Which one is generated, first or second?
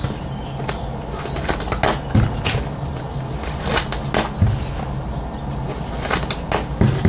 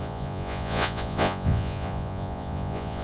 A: second